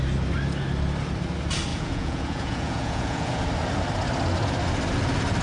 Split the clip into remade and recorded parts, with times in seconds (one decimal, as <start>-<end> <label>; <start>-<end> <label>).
0.0-1.7 recorded; 1.7-3.4 remade; 3.4-5.4 recorded